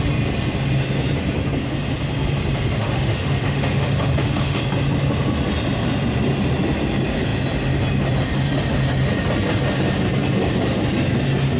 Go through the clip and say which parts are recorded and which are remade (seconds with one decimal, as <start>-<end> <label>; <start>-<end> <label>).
0.0-2.8 recorded; 2.8-4.6 remade; 4.6-11.6 recorded